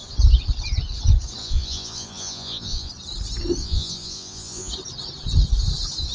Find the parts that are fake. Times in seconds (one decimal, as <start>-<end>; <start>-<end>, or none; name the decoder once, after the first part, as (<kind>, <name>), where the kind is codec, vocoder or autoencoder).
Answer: 1.4-2.9 (vocoder, Vocos); 3.6-4.7